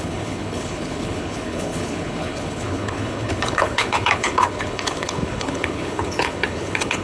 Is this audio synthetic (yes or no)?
yes